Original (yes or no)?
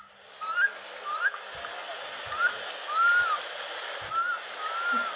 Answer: yes